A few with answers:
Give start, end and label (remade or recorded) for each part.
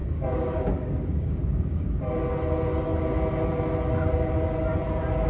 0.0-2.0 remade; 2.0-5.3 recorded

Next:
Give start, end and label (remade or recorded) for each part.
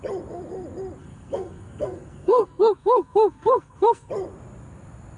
0.0-1.0 recorded; 1.0-4.1 remade; 4.1-5.2 recorded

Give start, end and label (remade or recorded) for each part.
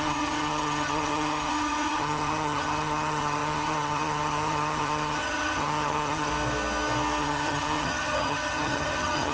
0.0-6.3 remade; 6.3-7.2 recorded; 7.2-9.3 remade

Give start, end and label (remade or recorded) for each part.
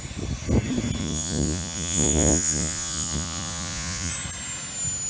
0.0-1.0 recorded; 1.0-4.1 remade; 4.1-5.1 recorded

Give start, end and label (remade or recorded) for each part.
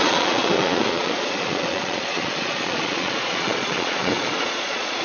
0.0-5.0 remade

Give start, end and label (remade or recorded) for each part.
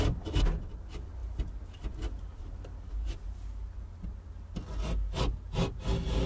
0.0-6.3 recorded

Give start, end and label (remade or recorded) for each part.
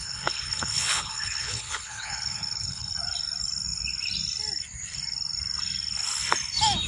0.0-2.9 remade; 2.9-6.9 recorded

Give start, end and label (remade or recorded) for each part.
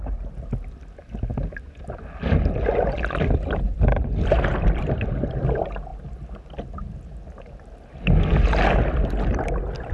0.0-9.9 recorded